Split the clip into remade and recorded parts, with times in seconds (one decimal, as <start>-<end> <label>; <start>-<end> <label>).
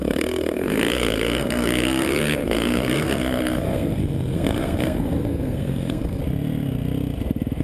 0.0-6.2 remade; 6.2-7.6 recorded